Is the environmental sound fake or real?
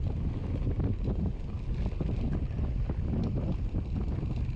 real